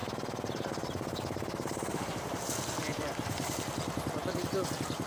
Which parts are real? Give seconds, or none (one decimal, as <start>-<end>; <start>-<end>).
2.4-2.8; 3.5-5.1